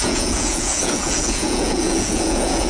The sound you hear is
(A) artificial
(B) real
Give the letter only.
A